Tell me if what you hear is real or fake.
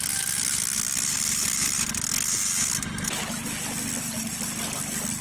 real